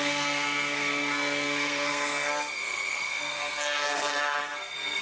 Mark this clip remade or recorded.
remade